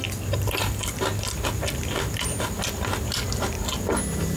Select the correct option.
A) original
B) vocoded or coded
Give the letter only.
A